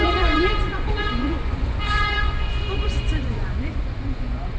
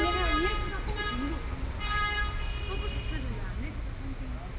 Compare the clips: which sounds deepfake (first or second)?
first